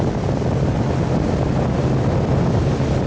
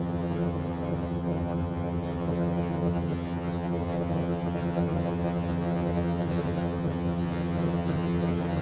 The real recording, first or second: first